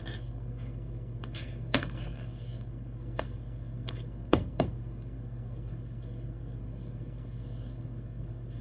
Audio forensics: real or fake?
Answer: fake